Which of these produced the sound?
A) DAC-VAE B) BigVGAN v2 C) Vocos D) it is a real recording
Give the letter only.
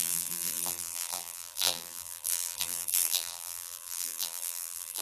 B